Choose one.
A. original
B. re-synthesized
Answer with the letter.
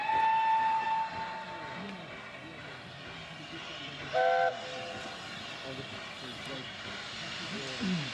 A